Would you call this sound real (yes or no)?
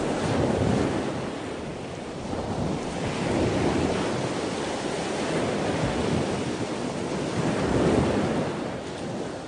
yes